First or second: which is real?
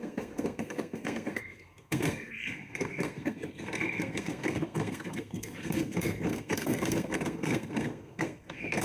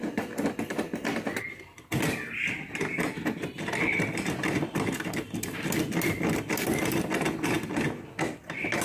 second